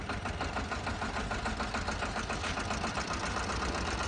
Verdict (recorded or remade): recorded